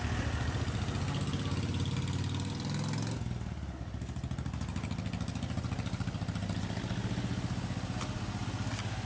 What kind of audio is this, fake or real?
real